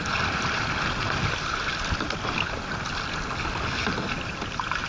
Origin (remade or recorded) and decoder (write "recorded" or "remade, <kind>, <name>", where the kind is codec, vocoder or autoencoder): recorded